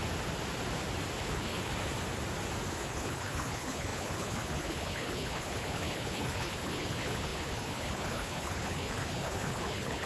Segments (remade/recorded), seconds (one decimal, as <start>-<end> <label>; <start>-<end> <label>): 0.0-1.2 recorded; 1.2-1.7 remade; 1.7-2.7 recorded; 2.7-10.1 remade